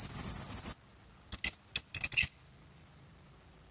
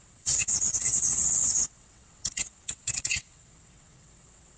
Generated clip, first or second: second